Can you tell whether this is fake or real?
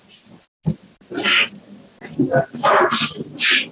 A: real